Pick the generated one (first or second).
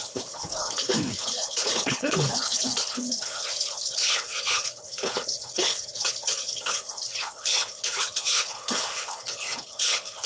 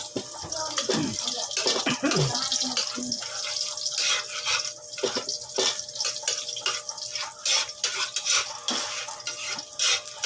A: first